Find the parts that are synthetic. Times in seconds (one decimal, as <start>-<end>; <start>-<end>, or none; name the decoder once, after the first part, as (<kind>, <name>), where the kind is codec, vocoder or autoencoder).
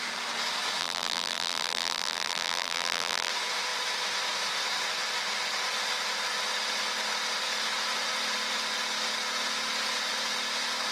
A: 0.8-3.3 (vocoder, BigVGAN v2)